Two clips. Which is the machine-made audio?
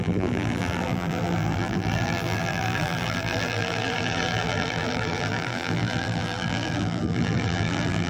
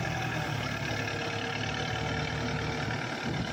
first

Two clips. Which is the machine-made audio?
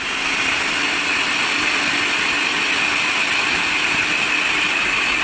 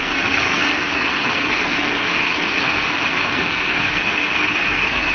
second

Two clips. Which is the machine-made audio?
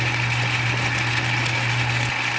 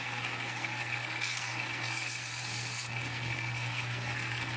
second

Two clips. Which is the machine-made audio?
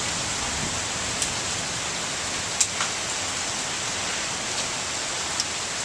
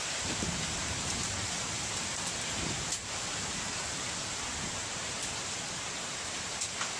second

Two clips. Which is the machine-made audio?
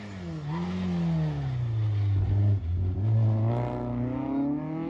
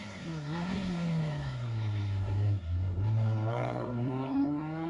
second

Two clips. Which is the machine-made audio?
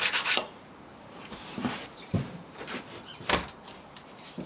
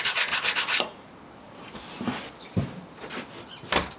first